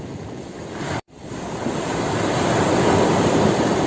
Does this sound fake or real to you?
fake